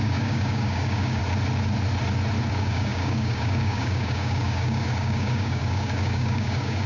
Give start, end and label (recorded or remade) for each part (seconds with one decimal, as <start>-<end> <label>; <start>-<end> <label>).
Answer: 0.0-1.2 remade; 1.2-2.5 recorded; 2.5-6.9 remade